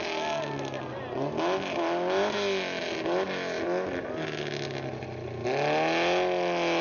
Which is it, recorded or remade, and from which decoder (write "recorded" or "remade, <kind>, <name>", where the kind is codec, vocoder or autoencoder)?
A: recorded